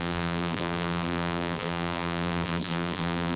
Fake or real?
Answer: fake